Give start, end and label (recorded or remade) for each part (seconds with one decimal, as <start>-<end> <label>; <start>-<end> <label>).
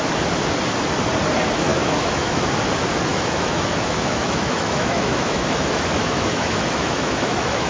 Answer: 0.0-1.7 recorded; 1.7-2.5 remade; 2.5-3.1 recorded; 3.1-7.7 remade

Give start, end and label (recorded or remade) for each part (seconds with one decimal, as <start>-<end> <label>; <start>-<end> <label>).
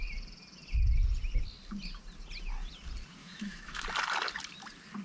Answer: 0.0-3.2 recorded; 3.2-3.8 remade; 3.8-5.0 recorded